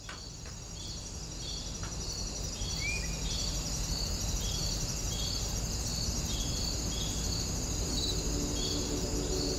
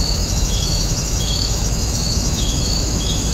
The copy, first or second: second